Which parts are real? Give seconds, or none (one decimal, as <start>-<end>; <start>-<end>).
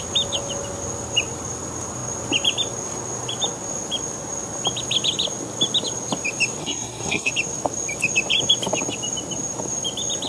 0.0-6.6; 7.3-10.3